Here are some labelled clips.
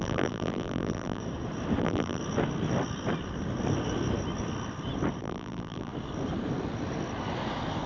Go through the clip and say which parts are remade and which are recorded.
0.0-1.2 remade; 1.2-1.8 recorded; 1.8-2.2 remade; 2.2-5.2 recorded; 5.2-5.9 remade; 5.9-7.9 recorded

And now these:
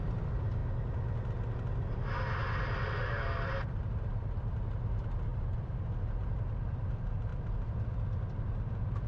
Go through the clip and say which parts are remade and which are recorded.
0.0-5.3 recorded; 5.3-6.0 remade; 6.0-9.1 recorded

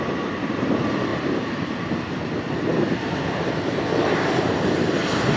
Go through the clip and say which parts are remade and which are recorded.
0.0-1.1 recorded; 1.1-4.3 remade; 4.3-5.4 recorded

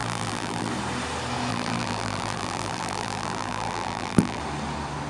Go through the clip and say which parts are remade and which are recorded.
0.0-0.7 remade; 0.7-1.5 recorded; 1.5-4.4 remade; 4.4-5.1 recorded

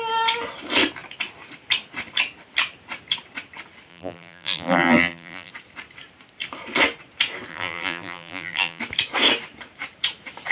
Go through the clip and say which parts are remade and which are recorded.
0.0-3.9 recorded; 3.9-5.5 remade; 5.5-7.5 recorded; 7.5-8.8 remade; 8.8-10.5 recorded

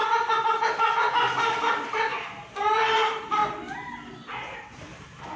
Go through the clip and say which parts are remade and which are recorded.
0.0-0.8 recorded; 0.8-3.4 remade; 3.4-5.0 recorded; 5.0-5.4 remade